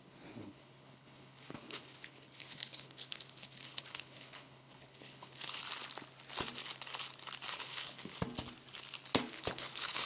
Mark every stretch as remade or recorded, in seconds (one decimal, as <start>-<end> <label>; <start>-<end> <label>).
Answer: 0.0-5.6 remade; 5.6-7.5 recorded; 7.5-8.1 remade; 8.1-9.3 recorded; 9.3-10.1 remade